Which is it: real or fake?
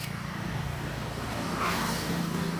fake